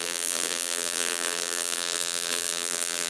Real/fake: fake